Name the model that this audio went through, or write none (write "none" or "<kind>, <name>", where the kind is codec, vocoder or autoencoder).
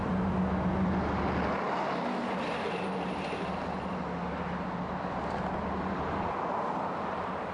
none